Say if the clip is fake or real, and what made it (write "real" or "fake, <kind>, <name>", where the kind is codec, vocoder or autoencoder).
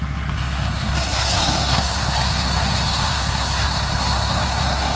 fake, codec, SNAC